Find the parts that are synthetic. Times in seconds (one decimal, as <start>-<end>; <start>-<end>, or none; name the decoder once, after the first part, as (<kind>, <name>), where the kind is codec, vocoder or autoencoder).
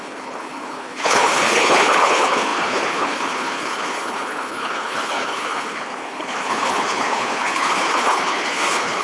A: 0.0-9.0 (codec, HILCodec)